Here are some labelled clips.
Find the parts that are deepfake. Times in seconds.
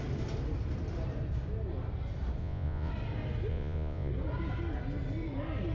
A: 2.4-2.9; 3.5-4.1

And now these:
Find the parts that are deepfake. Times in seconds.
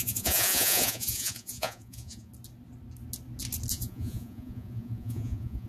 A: 0.0-2.3; 3.7-5.7